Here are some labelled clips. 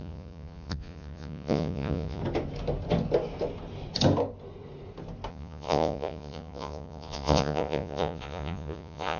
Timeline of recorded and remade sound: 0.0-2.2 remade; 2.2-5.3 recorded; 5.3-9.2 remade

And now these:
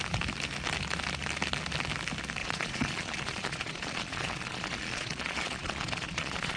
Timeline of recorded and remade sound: 0.0-2.4 recorded; 2.4-6.6 remade

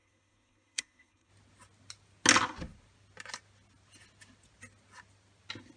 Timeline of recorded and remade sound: 0.0-1.3 remade; 1.3-5.8 recorded

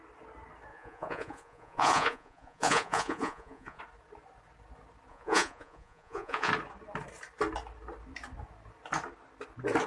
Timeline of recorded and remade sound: 0.0-0.7 recorded; 0.7-3.8 remade; 3.8-5.1 recorded; 5.1-6.5 remade; 6.5-9.9 recorded